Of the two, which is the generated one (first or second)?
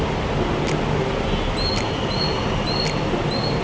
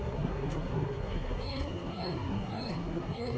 second